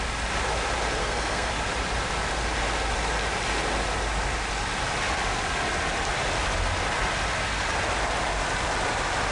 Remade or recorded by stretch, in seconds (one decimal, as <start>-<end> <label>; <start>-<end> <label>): 0.0-1.0 recorded; 1.0-1.5 remade; 1.5-9.3 recorded